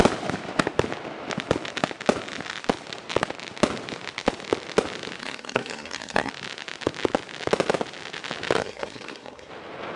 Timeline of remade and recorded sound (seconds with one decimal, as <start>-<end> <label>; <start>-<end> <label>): 0.0-5.2 recorded; 5.2-6.3 remade; 6.3-8.6 recorded; 8.6-9.5 remade; 9.5-10.0 recorded